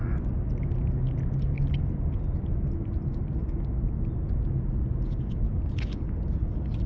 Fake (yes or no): no